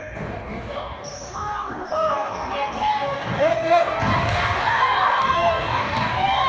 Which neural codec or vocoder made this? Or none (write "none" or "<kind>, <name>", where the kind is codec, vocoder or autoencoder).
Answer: codec, DAC